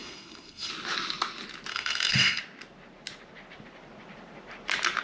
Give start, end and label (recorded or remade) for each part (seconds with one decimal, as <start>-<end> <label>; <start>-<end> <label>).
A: 0.0-0.7 remade; 0.7-1.7 recorded; 1.7-2.4 remade; 2.4-5.0 recorded